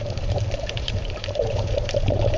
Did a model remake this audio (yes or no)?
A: yes